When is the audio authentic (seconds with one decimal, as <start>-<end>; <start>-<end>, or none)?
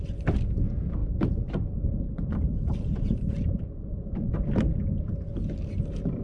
0.0-1.0; 4.3-6.2